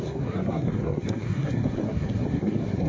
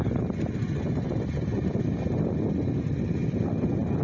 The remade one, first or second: first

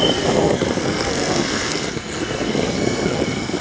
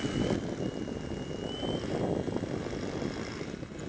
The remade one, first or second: first